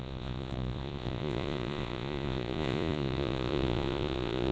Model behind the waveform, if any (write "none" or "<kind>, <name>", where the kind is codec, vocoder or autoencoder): vocoder, Vocos